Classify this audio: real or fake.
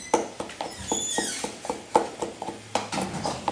real